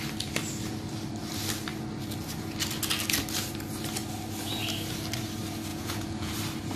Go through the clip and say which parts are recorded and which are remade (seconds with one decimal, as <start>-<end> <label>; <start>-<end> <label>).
0.0-5.7 recorded; 5.7-6.3 remade; 6.3-6.8 recorded